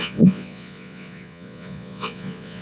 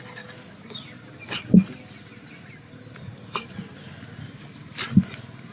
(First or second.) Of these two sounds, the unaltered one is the second